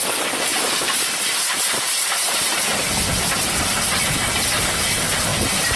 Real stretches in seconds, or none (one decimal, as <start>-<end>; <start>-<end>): 0.0-0.5; 2.6-5.8